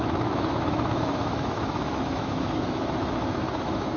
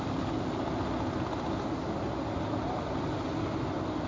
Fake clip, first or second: first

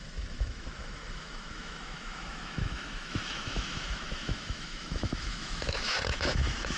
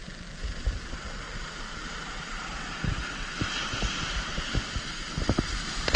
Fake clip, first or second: first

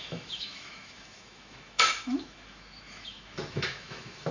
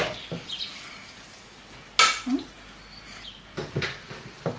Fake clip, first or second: first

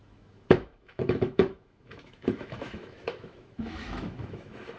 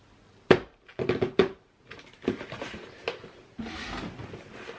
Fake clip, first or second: first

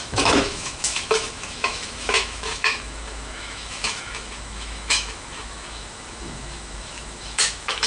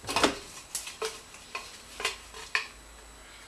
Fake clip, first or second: first